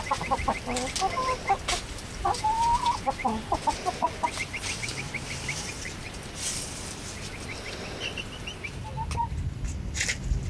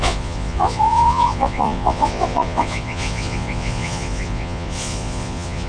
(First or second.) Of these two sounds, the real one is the first